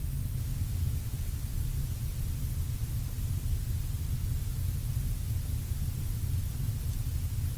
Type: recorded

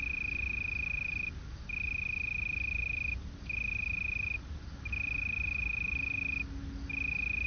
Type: recorded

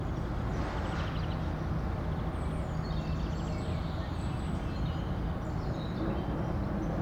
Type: recorded